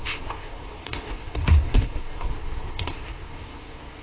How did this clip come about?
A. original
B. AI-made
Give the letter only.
B